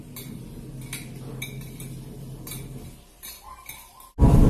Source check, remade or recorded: recorded